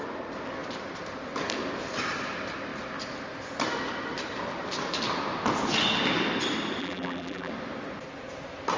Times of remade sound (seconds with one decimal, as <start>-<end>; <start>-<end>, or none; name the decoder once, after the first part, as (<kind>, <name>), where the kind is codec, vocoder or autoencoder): 6.8-7.5 (vocoder, BigVGAN v2)